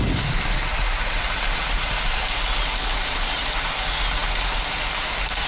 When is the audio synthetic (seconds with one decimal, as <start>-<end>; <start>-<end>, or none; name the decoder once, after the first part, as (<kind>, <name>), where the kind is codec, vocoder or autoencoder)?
none